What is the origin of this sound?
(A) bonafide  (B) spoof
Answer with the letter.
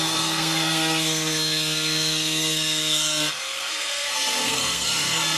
B